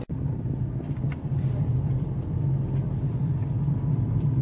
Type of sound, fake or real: fake